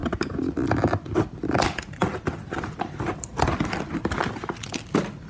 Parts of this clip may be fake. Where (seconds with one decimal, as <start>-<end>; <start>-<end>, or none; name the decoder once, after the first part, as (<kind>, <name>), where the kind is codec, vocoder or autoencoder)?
none